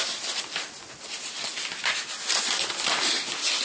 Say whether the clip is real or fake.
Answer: real